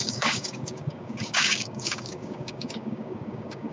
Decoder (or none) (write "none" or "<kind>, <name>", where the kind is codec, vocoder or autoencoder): codec, DAC